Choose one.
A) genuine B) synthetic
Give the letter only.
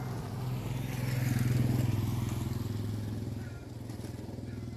A